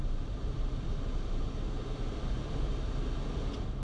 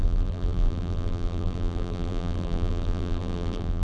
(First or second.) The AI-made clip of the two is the second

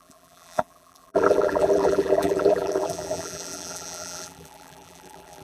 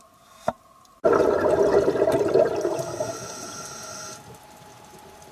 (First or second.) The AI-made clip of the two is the first